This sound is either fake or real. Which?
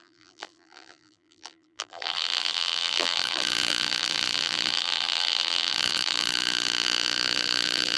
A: fake